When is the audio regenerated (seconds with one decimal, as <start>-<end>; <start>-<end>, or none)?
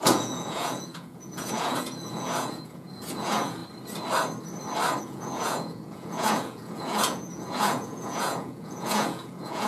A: 0.0-3.6; 5.0-9.7